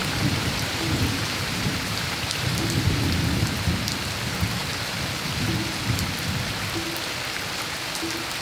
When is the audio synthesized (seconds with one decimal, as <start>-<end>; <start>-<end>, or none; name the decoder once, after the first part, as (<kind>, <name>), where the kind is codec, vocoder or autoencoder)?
0.0-3.0 (vocoder, BigVGAN v2)